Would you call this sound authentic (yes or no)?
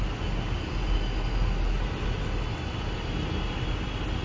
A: yes